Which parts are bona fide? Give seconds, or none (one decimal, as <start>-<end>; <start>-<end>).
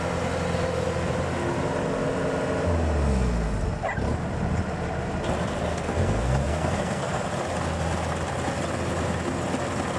0.0-5.7; 7.3-10.0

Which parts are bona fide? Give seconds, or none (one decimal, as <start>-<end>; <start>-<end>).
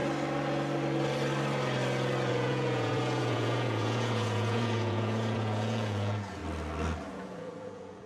0.0-2.3; 6.4-7.1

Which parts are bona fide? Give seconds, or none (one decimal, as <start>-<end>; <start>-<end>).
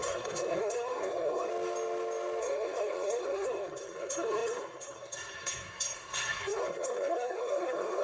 1.5-2.4